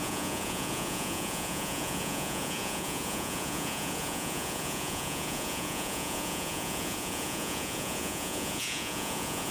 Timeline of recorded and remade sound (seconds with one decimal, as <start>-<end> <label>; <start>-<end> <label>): 0.0-9.5 remade